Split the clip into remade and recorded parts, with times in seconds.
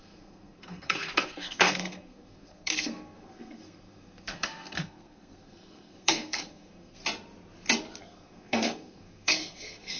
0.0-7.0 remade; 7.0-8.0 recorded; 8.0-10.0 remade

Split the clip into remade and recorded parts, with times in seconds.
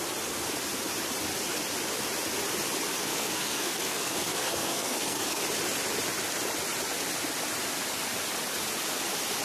0.0-3.0 recorded; 3.0-5.4 remade; 5.4-9.4 recorded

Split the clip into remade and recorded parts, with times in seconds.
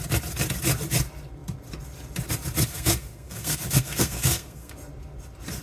0.0-2.7 recorded; 2.7-4.7 remade; 4.7-5.6 recorded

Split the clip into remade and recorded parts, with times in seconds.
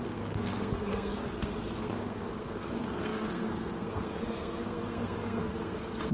0.0-6.1 remade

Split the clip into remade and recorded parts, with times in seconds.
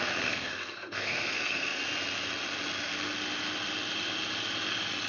0.0-1.8 remade; 1.8-5.1 recorded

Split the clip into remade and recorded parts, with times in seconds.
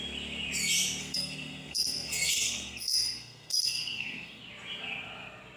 0.0-1.0 recorded; 1.0-4.4 remade; 4.4-5.6 recorded